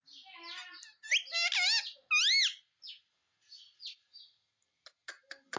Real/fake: real